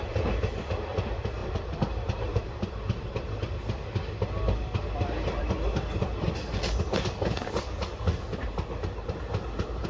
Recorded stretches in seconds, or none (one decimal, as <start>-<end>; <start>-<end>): 0.0-9.9